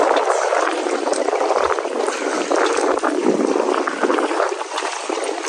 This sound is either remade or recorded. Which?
recorded